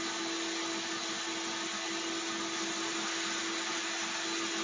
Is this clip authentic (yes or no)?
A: yes